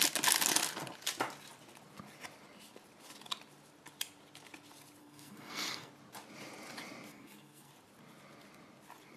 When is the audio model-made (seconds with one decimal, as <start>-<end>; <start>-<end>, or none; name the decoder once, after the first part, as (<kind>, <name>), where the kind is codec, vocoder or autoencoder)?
5.0-5.9 (codec, SNAC); 7.1-7.7